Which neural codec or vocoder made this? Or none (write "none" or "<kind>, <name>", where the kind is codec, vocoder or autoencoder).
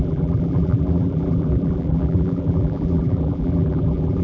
vocoder, BigVGAN v2